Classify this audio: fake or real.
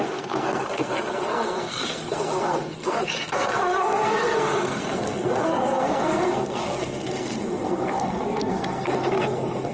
fake